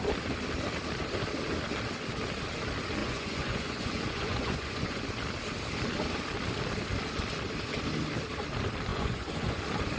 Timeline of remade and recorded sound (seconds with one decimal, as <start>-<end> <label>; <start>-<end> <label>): 0.0-3.0 recorded; 3.0-5.0 remade; 5.0-8.9 recorded; 8.9-9.6 remade; 9.6-10.0 recorded